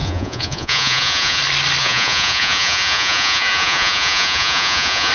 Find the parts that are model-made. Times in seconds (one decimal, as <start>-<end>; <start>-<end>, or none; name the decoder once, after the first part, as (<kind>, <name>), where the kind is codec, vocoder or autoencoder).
0.0-1.4 (vocoder, Vocos); 1.8-5.1